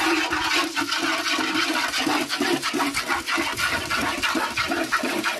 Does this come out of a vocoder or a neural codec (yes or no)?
no